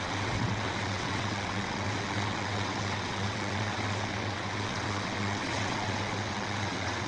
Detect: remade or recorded remade